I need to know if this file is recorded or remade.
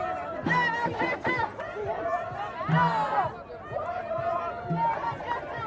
recorded